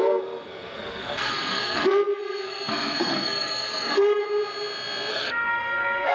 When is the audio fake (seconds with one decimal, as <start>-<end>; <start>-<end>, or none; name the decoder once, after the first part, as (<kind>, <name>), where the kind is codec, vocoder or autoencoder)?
0.0-4.2 (codec, SNAC); 5.1-6.1